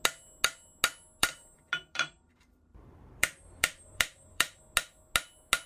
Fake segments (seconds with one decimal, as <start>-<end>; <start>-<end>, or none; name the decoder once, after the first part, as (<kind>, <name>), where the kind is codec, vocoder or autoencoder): 1.2-4.6 (vocoder, BigVGAN v2)